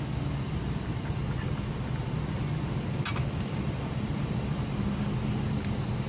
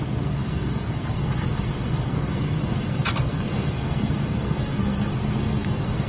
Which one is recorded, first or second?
first